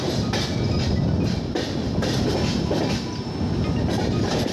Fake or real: real